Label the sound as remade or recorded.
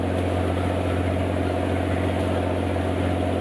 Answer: recorded